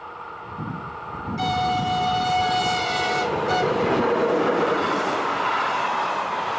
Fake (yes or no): no